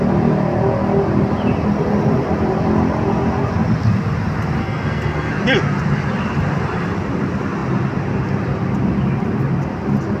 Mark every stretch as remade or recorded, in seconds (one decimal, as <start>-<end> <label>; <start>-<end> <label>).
0.0-4.6 recorded; 4.6-5.3 remade; 5.3-10.2 recorded

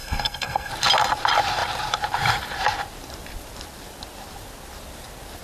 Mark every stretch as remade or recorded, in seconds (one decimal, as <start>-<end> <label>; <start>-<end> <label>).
0.0-0.7 remade; 0.7-5.4 recorded

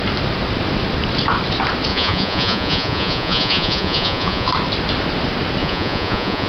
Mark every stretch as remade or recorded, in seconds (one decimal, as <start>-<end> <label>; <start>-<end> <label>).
0.0-1.9 recorded; 1.9-4.5 remade; 4.5-5.6 recorded; 5.6-6.5 remade

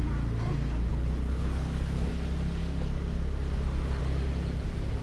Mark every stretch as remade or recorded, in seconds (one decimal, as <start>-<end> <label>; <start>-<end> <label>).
0.0-0.9 recorded; 0.9-2.1 remade; 2.1-5.0 recorded

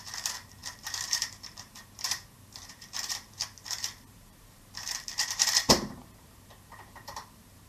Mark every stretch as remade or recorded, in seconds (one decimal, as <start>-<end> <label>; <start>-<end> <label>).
0.0-7.7 remade